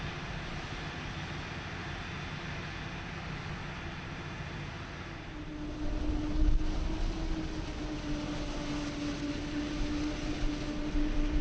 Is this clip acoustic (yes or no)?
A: yes